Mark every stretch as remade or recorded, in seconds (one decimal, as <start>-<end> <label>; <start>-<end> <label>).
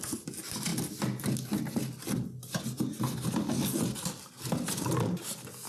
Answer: 0.0-5.7 recorded